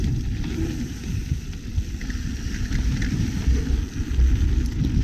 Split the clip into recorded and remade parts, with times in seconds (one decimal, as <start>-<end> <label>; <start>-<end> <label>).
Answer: 0.0-5.0 recorded